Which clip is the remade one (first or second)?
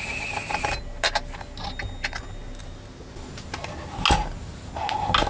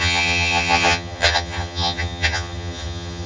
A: second